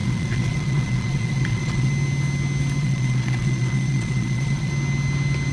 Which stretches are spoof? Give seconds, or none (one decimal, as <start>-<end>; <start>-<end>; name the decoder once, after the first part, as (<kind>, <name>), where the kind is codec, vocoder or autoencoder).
0.0-1.9 (vocoder, Vocos); 2.8-4.7